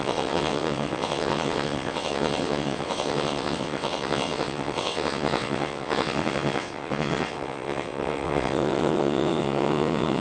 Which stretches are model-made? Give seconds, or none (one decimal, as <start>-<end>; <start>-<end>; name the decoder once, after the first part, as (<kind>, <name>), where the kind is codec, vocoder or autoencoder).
0.0-10.2 (vocoder, WaveNeXt)